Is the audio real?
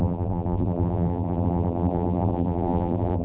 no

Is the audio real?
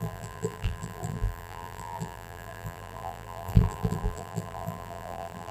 no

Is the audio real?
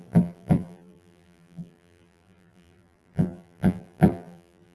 no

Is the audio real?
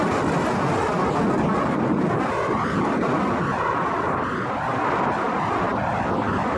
yes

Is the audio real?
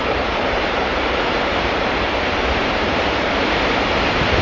no